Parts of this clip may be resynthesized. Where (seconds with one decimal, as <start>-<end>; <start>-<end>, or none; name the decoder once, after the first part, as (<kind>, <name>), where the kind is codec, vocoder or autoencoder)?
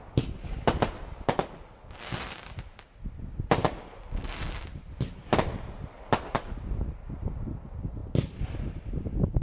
none